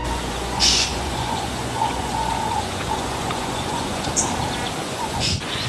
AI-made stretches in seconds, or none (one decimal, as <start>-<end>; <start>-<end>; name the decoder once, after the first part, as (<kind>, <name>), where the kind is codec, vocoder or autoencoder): 0.0-4.1 (vocoder, Vocos); 4.8-5.7